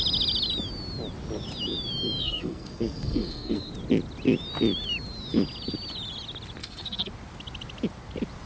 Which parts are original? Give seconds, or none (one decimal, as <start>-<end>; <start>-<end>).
0.0-2.2; 3.7-6.6; 7.1-8.5